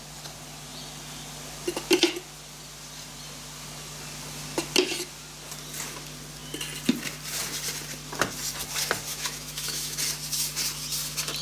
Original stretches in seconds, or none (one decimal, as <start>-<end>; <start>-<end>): 0.0-9.1; 10.0-11.4